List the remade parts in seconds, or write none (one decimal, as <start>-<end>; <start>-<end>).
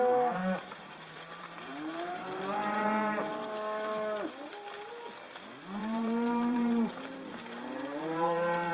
0.4-3.3; 5.8-8.7